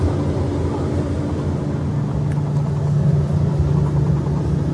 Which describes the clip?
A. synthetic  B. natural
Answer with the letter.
B